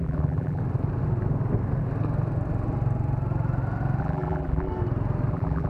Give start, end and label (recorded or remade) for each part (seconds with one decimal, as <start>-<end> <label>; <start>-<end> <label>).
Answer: 0.0-0.6 remade; 0.6-4.0 recorded; 4.0-4.7 remade; 4.7-5.3 recorded; 5.3-5.7 remade